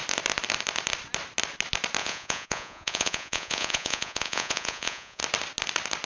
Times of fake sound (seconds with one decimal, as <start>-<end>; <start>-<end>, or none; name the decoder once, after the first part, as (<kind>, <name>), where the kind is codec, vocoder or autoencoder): 2.0-5.2 (vocoder, Vocos)